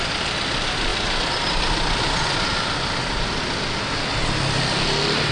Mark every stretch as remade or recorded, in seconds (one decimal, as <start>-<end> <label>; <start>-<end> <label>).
0.0-5.3 recorded